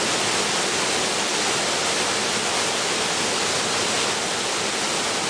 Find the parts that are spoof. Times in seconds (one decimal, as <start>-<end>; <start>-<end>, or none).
none